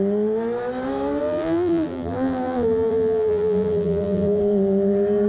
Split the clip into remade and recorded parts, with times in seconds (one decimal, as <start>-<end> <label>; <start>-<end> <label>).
0.0-1.2 recorded; 1.2-4.4 remade; 4.4-5.3 recorded